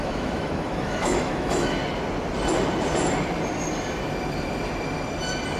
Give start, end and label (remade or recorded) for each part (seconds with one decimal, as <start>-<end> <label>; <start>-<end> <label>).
0.0-1.8 remade; 1.8-5.6 recorded